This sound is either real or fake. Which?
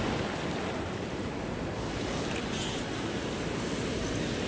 real